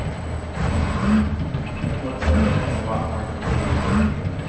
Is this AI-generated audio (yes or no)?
no